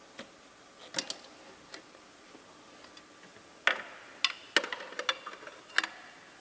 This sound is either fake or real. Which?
real